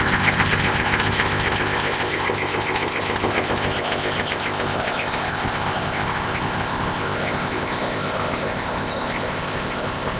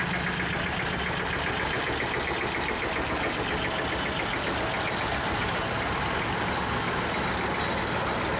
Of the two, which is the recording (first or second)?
second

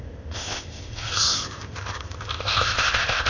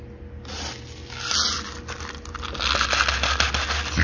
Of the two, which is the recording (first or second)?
second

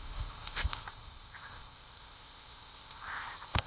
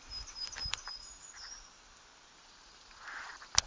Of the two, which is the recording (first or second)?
second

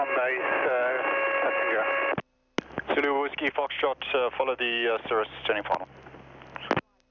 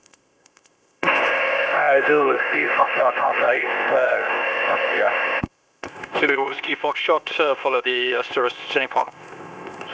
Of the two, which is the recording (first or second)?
first